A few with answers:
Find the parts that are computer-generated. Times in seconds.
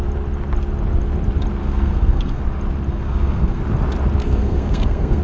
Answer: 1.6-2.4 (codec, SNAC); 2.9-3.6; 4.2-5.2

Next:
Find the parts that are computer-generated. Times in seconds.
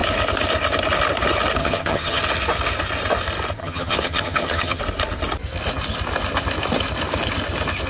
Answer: 1.6-2.2 (vocoder, HiFi-GAN); 3.6-4.8